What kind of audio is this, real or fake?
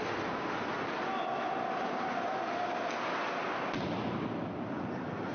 real